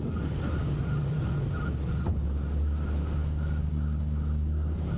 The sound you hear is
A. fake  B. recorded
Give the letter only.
B